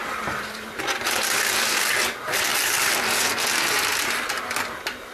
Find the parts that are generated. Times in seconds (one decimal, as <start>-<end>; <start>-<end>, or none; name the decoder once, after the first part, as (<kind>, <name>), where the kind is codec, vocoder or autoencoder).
none